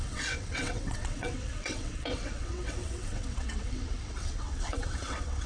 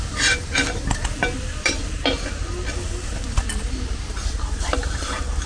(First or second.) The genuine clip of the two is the second